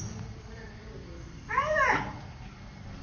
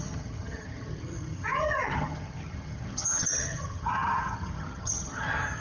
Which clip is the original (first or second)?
first